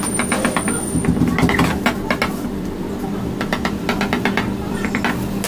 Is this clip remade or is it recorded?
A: recorded